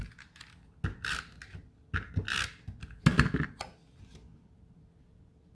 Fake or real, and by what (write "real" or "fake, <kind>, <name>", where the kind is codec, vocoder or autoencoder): real